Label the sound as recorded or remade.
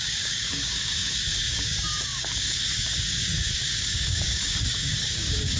remade